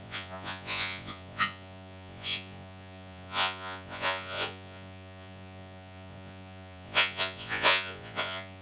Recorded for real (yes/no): no